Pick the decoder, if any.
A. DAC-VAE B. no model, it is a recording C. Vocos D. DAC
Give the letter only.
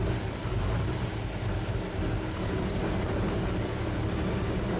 B